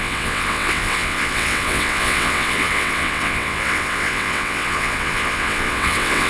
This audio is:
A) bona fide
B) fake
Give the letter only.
B